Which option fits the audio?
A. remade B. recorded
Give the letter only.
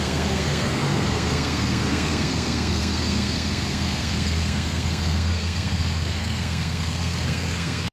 A